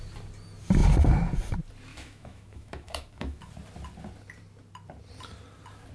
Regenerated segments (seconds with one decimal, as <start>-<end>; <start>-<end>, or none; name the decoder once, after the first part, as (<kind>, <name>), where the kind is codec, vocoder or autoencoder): 1.9-3.5 (autoencoder, DAC-VAE)

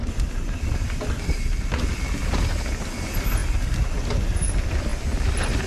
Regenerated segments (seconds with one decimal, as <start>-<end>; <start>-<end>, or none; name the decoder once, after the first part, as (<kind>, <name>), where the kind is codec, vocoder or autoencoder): none

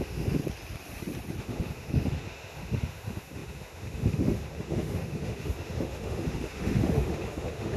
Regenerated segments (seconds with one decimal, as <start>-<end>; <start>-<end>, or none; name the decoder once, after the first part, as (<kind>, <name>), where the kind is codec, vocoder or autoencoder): 0.0-0.4 (autoencoder, DAC-VAE); 1.4-7.8

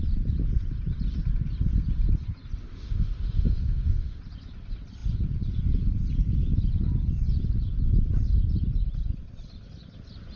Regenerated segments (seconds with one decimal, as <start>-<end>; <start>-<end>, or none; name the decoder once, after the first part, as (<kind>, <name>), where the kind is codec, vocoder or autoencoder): 2.6-4.2 (autoencoder, DAC-VAE)

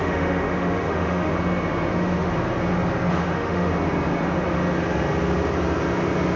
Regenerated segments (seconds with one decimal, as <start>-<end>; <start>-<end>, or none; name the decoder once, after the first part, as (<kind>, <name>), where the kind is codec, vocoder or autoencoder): 0.0-1.3 (autoencoder, DAC-VAE); 1.9-2.3; 3.1-3.7

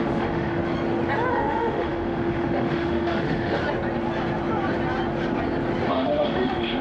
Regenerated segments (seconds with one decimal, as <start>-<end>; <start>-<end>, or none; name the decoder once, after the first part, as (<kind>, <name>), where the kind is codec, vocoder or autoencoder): 0.0-0.6 (autoencoder, DAC-VAE); 1.3-3.6; 5.9-6.8

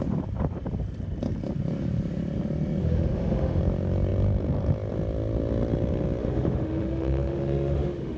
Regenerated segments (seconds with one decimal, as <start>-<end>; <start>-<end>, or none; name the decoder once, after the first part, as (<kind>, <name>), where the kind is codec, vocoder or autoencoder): 2.8-3.6 (autoencoder, DAC-VAE); 6.2-8.2